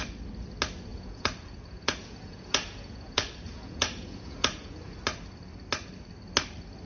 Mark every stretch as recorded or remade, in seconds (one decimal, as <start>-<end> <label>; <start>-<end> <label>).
0.0-0.9 recorded; 0.9-5.0 remade; 5.0-6.9 recorded